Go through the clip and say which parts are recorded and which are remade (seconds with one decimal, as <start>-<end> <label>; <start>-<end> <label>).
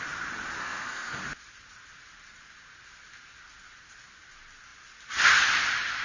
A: 0.0-0.6 recorded; 0.6-1.2 remade; 1.2-6.0 recorded